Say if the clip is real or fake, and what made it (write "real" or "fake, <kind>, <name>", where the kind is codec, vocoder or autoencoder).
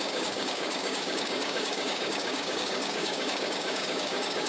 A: fake, codec, DAC